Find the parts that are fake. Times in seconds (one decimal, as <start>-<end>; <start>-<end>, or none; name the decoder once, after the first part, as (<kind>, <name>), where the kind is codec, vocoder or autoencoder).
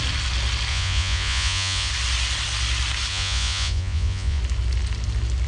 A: 0.7-1.9 (vocoder, Vocos); 3.1-4.4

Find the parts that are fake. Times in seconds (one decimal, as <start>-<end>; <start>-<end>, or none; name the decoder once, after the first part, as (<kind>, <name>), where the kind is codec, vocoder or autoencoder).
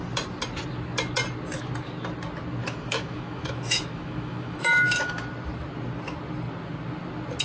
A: 2.6-5.1 (autoencoder, DAC-VAE)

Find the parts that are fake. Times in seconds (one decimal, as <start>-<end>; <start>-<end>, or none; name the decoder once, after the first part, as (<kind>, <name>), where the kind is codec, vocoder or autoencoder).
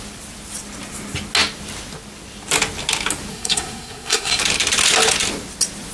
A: 3.3-4.4 (codec, SNAC)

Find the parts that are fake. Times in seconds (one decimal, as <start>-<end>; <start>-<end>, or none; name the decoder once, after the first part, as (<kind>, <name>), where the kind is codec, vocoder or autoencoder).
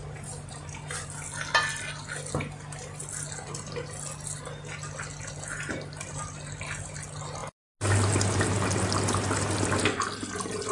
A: none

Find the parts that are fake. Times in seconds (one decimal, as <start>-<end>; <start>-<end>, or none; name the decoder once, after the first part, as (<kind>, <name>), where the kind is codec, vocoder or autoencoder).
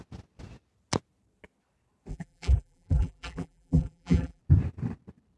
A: 2.1-4.4 (vocoder, BigVGAN v2)